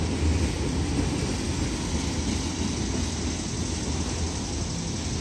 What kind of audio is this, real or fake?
real